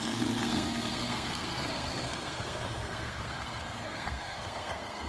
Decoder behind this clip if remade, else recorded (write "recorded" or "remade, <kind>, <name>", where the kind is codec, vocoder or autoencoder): remade, codec, SNAC